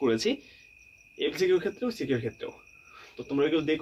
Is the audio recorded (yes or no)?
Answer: yes